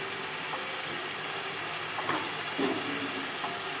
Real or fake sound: real